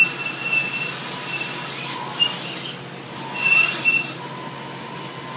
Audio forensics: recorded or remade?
recorded